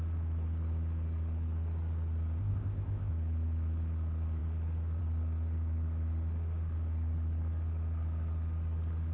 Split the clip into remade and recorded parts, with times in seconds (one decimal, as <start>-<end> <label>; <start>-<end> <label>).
0.0-2.4 recorded; 2.4-3.1 remade; 3.1-9.1 recorded